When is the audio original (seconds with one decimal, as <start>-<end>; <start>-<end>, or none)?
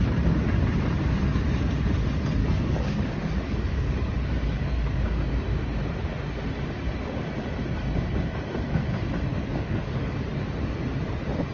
0.0-2.4; 5.2-9.3; 10.1-11.5